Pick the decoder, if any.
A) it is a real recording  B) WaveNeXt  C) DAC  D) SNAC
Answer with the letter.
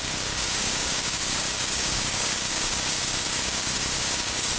C